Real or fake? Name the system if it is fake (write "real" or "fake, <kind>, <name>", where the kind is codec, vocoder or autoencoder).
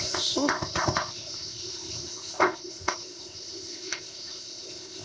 fake, codec, ZipCodec